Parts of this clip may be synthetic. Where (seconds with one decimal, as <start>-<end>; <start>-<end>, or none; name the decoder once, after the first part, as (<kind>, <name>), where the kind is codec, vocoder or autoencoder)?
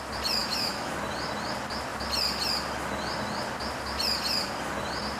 0.4-0.9 (autoencoder, DAC-VAE)